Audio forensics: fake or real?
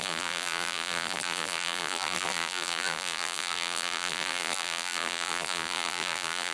fake